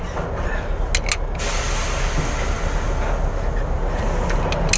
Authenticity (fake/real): real